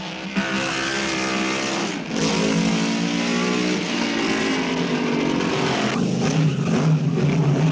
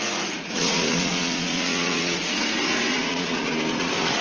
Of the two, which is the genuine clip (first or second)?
first